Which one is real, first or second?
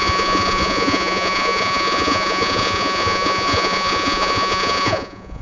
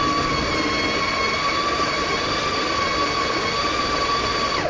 second